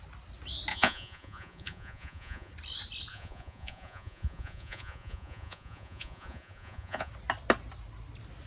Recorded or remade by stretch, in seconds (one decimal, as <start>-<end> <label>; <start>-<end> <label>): 0.0-0.7 recorded; 0.7-2.5 remade; 2.5-3.1 recorded; 3.1-7.1 remade; 7.1-8.5 recorded